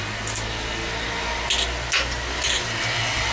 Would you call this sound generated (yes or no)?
no